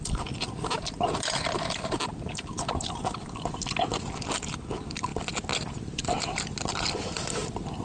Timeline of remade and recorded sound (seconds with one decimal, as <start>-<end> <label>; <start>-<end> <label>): 0.0-7.8 recorded